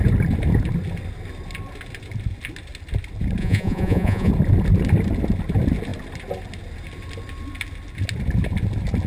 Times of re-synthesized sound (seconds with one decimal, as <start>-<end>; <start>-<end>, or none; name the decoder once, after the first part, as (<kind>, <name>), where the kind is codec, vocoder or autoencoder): 3.4-4.3 (vocoder, Vocos)